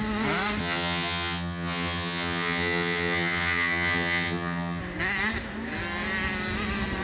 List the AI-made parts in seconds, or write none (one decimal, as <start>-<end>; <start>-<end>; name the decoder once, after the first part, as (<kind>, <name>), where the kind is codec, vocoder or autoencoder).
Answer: 0.6-4.8 (vocoder, HiFi-GAN)

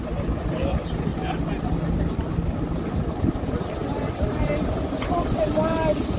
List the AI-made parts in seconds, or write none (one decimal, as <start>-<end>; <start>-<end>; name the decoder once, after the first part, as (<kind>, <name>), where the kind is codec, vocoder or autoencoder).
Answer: none